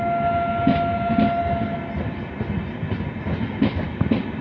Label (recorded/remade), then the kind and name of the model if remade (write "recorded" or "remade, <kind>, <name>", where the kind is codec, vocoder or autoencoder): recorded